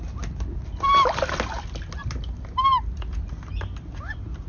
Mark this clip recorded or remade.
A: recorded